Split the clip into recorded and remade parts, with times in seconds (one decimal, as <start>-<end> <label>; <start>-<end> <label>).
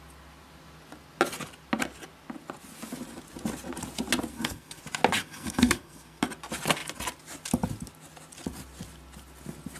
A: 0.0-4.3 recorded; 4.3-4.8 remade; 4.8-5.2 recorded; 5.2-6.2 remade; 6.2-9.8 recorded